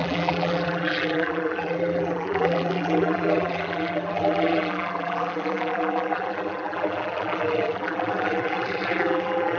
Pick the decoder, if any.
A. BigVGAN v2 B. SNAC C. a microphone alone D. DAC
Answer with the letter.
A